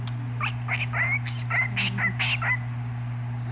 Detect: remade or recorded recorded